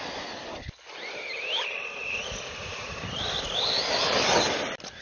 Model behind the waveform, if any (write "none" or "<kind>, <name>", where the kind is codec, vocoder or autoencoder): none